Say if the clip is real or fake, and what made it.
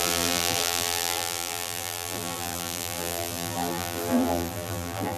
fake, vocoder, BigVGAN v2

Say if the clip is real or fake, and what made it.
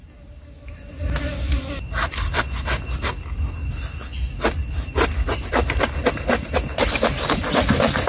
real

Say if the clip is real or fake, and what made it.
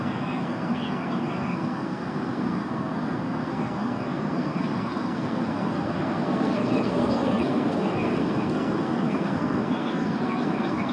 fake, codec, SNAC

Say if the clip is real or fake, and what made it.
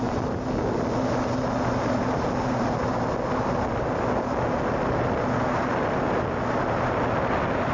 real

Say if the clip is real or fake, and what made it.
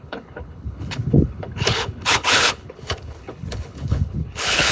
fake, codec, HILCodec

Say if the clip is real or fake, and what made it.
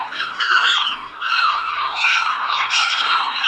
fake, codec, SNAC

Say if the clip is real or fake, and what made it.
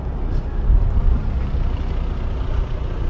real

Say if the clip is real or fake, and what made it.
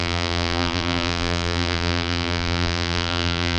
fake, vocoder, BigVGAN v2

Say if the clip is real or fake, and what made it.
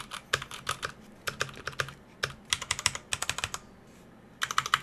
real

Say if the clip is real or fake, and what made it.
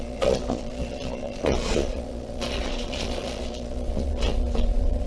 fake, vocoder, Vocos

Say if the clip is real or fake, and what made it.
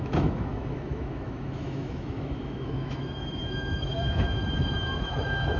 fake, autoencoder, DAC-VAE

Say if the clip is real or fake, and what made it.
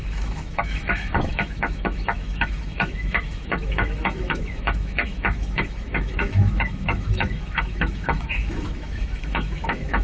fake, autoencoder, DAC-VAE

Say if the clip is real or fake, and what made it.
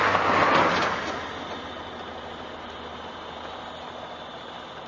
real